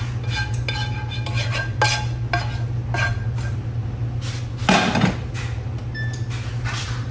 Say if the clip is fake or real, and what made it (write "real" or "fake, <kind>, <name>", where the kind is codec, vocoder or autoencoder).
real